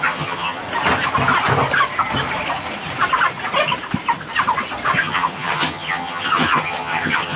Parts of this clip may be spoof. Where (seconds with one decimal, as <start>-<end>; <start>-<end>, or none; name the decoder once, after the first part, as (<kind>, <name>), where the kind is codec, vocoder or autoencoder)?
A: 0.0-0.6 (vocoder, HiFi-GAN); 5.0-7.4